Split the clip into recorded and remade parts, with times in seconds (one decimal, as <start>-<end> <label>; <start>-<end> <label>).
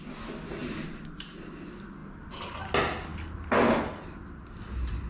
0.0-2.0 recorded; 2.0-2.7 remade; 2.7-5.1 recorded